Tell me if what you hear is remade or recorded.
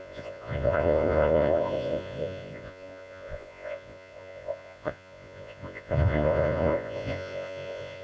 remade